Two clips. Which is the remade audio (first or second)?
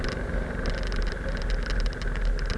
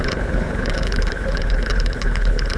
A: second